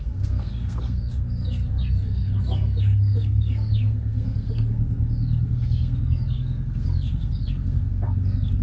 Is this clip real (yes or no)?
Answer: no